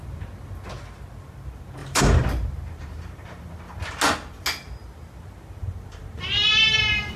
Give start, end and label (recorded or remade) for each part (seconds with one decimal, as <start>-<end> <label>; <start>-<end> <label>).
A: 0.0-1.8 recorded; 1.8-3.6 remade; 3.6-4.8 recorded; 4.8-6.2 remade; 6.2-7.2 recorded

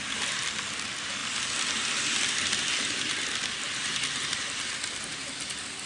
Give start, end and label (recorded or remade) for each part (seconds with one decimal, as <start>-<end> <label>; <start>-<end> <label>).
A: 0.0-5.9 recorded

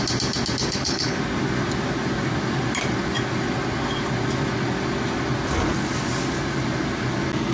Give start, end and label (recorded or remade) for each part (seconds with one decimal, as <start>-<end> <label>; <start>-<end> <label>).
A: 0.0-0.6 recorded; 0.6-1.2 remade; 1.2-7.5 recorded

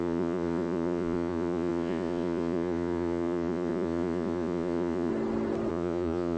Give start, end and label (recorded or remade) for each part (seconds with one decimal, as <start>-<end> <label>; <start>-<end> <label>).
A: 0.0-5.1 remade; 5.1-5.7 recorded; 5.7-6.4 remade